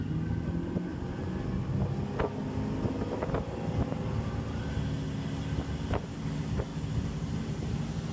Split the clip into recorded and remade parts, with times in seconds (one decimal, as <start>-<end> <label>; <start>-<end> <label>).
0.0-8.1 recorded

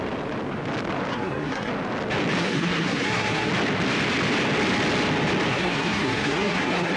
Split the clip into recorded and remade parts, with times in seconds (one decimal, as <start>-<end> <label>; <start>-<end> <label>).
0.0-1.1 recorded; 1.1-1.7 remade; 1.7-2.4 recorded; 2.4-3.5 remade; 3.5-5.5 recorded; 5.5-7.0 remade

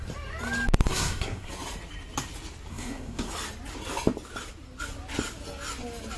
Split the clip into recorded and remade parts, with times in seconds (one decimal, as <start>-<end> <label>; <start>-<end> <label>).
0.0-0.9 recorded; 0.9-1.5 remade; 1.5-2.7 recorded; 2.7-3.3 remade; 3.3-6.2 recorded

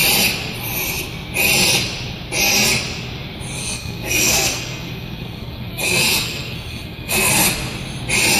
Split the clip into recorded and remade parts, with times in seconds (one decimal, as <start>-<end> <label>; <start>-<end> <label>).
0.0-3.6 recorded; 3.6-7.3 remade; 7.3-8.4 recorded

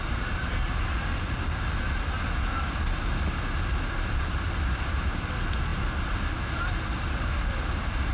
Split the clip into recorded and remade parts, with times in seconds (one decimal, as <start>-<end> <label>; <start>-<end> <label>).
0.0-8.1 recorded